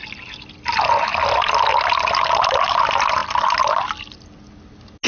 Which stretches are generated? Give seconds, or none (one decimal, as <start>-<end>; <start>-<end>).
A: none